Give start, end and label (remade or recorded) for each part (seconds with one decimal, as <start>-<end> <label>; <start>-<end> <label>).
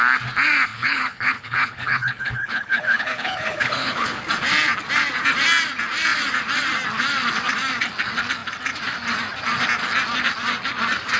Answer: 0.0-0.7 recorded; 0.7-4.2 remade; 4.2-11.2 recorded